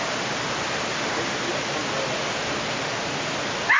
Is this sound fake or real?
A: real